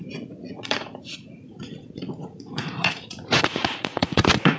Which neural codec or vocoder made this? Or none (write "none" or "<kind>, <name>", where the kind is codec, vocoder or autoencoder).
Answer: vocoder, Vocos